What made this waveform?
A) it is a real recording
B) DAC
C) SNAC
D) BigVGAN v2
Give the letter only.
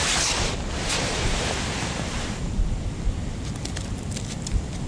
A